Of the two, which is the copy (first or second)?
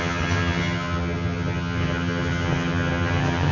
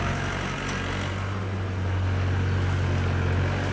first